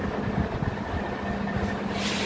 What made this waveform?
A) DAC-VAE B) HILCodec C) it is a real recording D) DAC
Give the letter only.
C